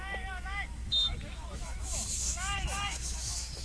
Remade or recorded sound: remade